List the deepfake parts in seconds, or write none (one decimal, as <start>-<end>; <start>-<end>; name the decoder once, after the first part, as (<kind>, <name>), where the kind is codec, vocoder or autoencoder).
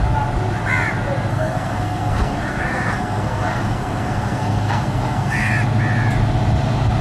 1.3-5.5 (codec, SNAC)